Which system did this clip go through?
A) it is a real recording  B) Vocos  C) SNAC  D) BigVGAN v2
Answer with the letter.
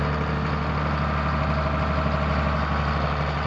A